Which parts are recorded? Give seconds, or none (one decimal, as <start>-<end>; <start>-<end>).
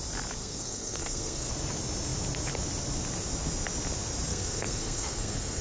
0.0-0.4; 1.5-4.3